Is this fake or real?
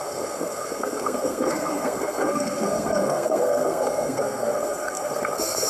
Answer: fake